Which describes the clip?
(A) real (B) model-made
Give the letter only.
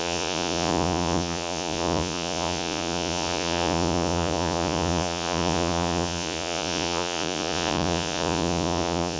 B